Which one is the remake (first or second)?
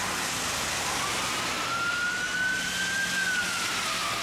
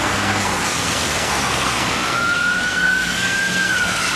second